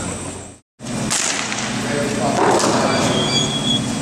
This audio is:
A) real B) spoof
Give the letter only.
A